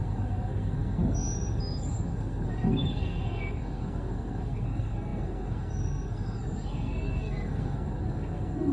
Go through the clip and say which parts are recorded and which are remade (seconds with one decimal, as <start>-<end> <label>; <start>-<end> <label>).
0.0-8.7 remade